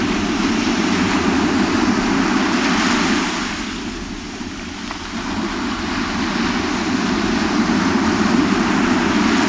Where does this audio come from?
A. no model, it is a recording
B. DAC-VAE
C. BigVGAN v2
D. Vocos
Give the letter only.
A